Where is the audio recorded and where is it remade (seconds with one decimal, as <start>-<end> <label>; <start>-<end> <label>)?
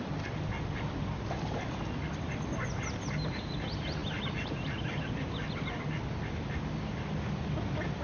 0.0-8.0 recorded